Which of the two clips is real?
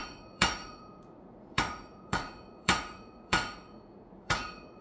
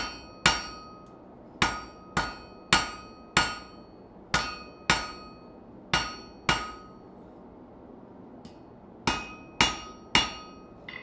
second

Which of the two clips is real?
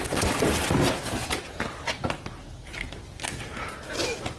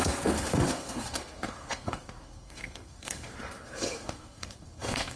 first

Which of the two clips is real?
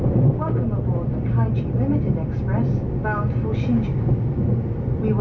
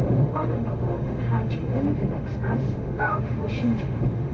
first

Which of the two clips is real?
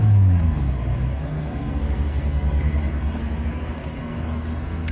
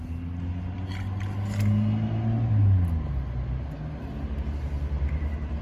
second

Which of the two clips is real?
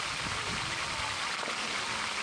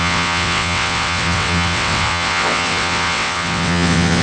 first